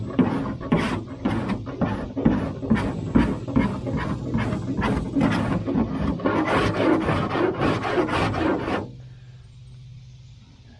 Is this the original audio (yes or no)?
yes